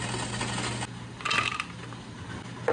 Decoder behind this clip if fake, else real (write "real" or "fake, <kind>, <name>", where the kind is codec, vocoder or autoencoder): real